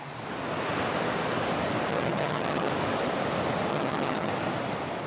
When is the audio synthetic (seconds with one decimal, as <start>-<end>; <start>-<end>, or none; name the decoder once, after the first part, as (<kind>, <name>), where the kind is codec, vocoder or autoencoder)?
1.9-2.7 (vocoder, HiFi-GAN); 3.7-4.3